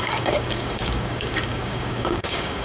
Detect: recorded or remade remade